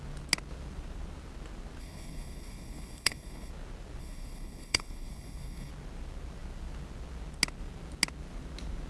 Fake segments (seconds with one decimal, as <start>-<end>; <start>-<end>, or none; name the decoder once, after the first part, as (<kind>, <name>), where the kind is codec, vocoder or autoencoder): 1.8-3.5 (codec, HILCodec); 4.0-5.7